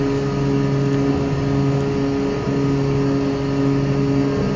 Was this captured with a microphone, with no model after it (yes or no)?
yes